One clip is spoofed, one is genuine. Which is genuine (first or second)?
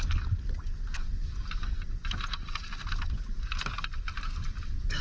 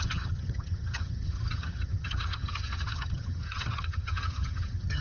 first